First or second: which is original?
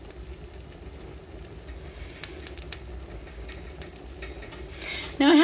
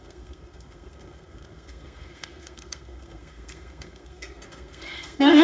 first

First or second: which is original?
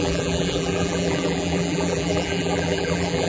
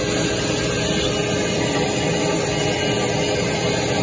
second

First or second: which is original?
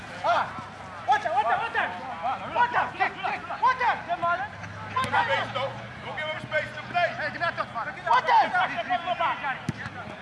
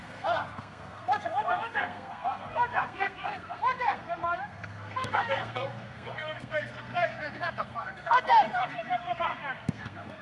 first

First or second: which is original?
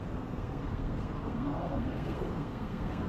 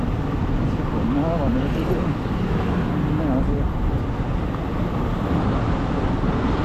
second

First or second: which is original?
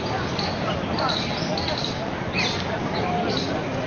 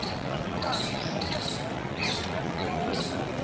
first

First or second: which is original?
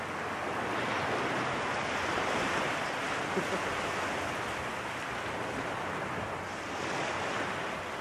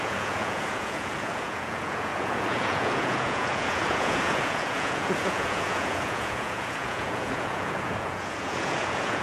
first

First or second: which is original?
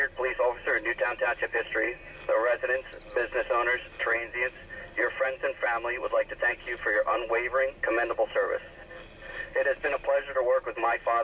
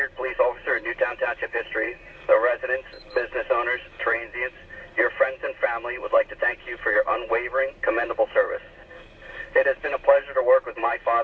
first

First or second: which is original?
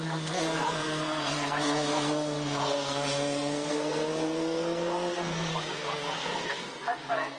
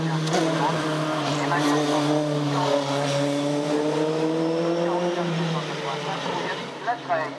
second